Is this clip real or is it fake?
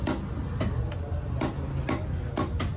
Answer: real